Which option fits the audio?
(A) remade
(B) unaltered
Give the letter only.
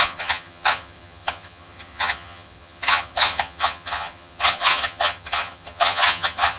A